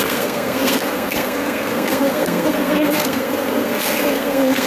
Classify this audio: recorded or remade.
remade